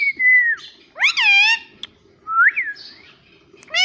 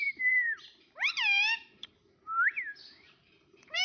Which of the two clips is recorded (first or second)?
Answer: first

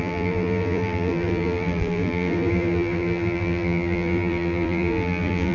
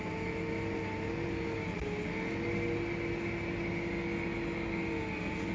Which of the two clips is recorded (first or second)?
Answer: second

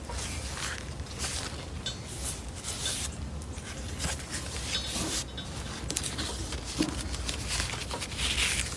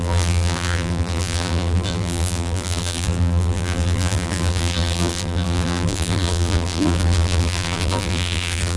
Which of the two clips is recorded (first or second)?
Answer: first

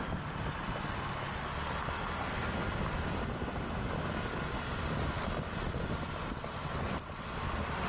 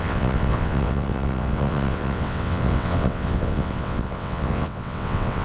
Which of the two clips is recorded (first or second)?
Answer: first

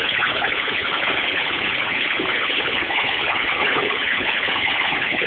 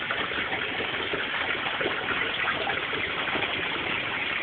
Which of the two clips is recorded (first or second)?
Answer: second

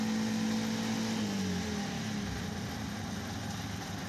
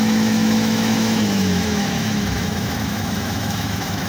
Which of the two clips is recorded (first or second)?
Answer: first